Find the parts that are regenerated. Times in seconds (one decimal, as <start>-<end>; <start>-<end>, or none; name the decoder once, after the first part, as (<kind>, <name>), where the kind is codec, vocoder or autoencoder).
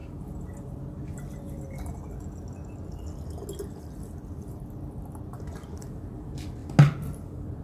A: none